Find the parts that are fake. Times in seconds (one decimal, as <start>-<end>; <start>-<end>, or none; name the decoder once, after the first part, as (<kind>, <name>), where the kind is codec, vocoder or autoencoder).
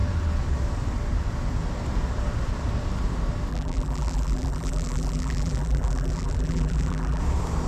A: 3.5-7.2 (vocoder, BigVGAN v2)